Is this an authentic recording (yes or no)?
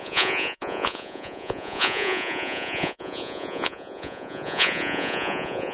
no